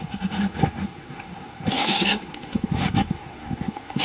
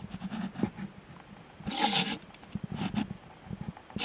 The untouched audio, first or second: second